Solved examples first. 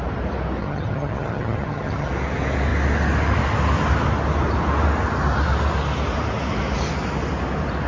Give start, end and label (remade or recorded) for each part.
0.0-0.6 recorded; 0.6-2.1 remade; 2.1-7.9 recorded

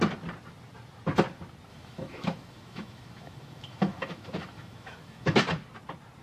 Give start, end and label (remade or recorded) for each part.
0.0-1.7 recorded; 1.7-5.4 remade; 5.4-6.2 recorded

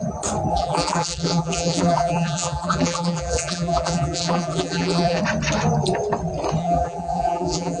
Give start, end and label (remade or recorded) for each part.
0.0-0.5 recorded; 0.5-5.2 remade; 5.2-6.6 recorded; 6.6-7.8 remade

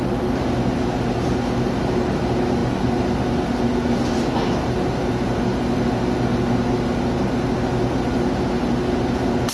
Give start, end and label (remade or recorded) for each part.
0.0-9.5 recorded

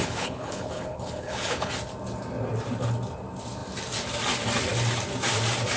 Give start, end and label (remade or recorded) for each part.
0.0-1.7 remade; 1.7-5.8 recorded

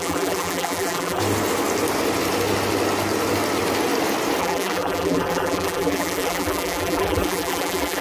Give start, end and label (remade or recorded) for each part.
0.0-1.2 remade; 1.2-4.4 recorded; 4.4-8.0 remade

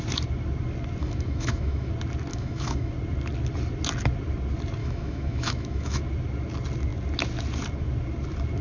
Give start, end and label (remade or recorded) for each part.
0.0-1.0 recorded; 1.0-1.9 remade; 1.9-2.3 recorded; 2.3-2.9 remade; 2.9-4.8 recorded; 4.8-6.0 remade; 6.0-8.6 recorded

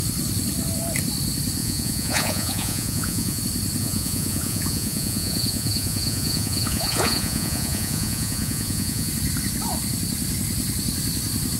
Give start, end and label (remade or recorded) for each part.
0.0-1.6 recorded; 1.6-3.4 remade; 3.4-3.8 recorded; 3.8-9.1 remade; 9.1-11.6 recorded